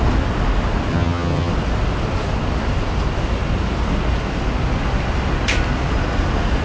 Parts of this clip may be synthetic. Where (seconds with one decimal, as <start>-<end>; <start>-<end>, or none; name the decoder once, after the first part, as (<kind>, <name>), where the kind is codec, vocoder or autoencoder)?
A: 0.9-1.5 (vocoder, HiFi-GAN)